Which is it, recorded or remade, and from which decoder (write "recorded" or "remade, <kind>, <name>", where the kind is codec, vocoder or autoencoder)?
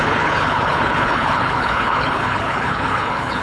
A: remade, codec, HILCodec